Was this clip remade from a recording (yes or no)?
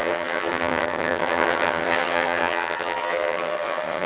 yes